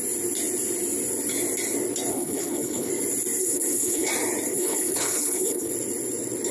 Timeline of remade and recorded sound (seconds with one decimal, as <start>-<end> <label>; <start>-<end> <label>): 0.0-2.1 recorded; 2.1-2.9 remade; 2.9-3.4 recorded; 3.4-4.1 remade; 4.1-4.5 recorded; 4.5-5.7 remade; 5.7-6.5 recorded